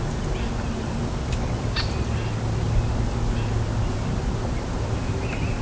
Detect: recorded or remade recorded